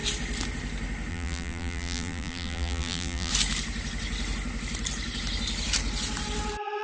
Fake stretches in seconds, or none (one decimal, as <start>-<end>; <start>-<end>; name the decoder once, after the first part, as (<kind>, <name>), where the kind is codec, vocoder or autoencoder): 1.1-3.3 (vocoder, BigVGAN v2)